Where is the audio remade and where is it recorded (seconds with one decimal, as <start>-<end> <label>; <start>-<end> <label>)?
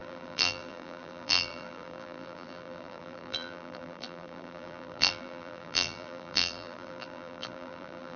0.0-8.2 remade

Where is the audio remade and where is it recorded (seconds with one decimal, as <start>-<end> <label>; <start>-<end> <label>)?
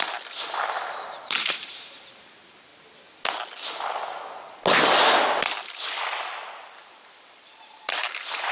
0.0-2.7 remade; 2.7-6.5 recorded; 6.5-8.5 remade